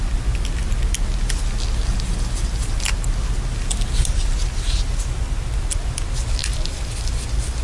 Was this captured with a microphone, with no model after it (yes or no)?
yes